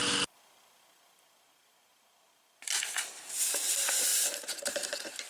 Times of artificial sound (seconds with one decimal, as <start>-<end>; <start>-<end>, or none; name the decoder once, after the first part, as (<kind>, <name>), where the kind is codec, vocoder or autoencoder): 4.1-5.3 (vocoder, BigVGAN v2)